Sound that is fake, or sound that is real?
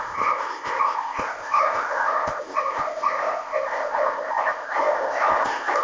fake